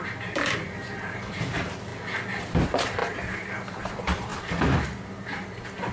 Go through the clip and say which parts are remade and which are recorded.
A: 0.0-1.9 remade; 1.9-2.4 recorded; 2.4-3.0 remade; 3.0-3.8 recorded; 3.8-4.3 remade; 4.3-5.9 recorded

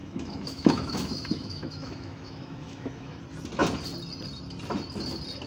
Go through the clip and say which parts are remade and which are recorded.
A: 0.0-3.2 remade; 3.2-5.5 recorded

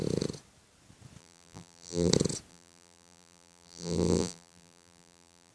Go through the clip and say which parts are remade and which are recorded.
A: 0.0-1.2 recorded; 1.2-2.1 remade; 2.1-2.5 recorded; 2.5-5.5 remade

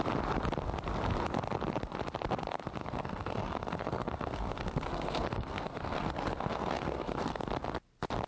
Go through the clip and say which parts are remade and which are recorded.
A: 0.0-2.8 recorded; 2.8-7.4 remade; 7.4-8.3 recorded

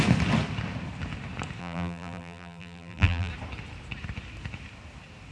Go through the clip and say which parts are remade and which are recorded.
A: 0.0-1.6 recorded; 1.6-3.3 remade; 3.3-5.3 recorded